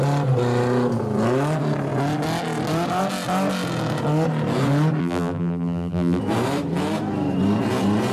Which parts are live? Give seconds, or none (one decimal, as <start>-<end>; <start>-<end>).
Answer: 0.0-5.0; 6.2-8.1